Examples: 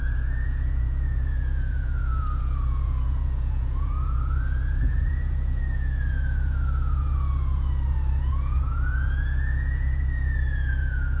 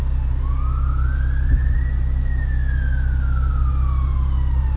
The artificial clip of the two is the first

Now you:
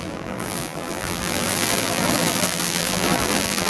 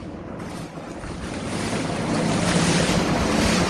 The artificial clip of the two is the first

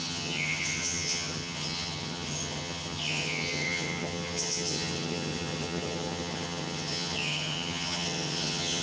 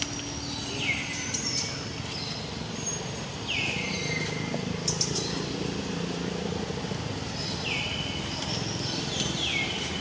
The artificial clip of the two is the first